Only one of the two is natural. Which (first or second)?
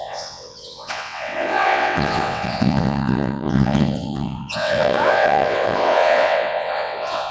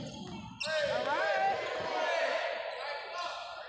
second